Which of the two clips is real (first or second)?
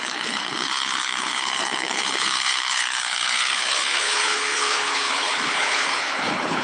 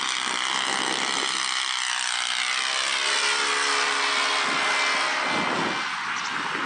second